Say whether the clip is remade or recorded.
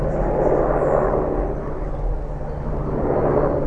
recorded